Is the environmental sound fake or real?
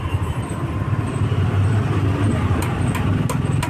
real